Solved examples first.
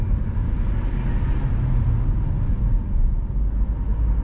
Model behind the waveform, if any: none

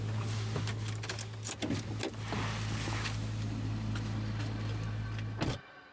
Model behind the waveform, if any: none